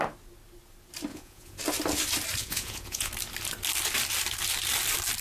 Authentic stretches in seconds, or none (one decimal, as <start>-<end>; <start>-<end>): 0.0-1.1; 1.6-2.4; 3.1-5.2